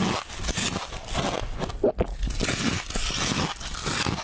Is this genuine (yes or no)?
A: yes